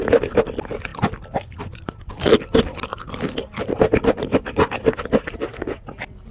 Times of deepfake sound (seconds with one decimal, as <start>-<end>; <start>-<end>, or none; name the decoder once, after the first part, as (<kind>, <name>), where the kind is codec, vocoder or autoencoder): none